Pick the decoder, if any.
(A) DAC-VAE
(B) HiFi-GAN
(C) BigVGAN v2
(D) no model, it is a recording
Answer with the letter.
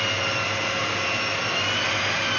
D